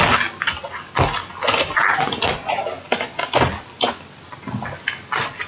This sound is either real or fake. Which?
real